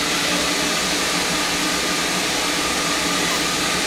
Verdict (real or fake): real